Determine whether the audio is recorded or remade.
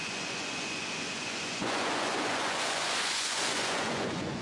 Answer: remade